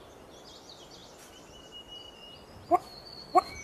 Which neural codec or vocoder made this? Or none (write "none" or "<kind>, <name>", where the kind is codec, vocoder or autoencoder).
none